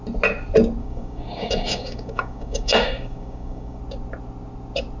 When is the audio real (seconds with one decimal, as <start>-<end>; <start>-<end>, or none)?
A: 0.0-0.8; 3.8-5.0